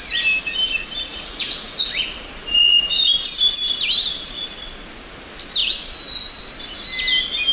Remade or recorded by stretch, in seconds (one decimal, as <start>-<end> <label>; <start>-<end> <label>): 0.0-1.1 recorded; 1.1-2.9 remade; 2.9-5.6 recorded; 5.6-6.4 remade; 6.4-7.5 recorded